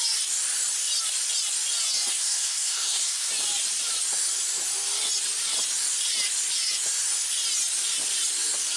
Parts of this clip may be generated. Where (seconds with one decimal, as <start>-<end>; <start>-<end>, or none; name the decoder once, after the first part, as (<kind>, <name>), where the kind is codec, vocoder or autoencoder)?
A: 2.1-3.3 (codec, SNAC)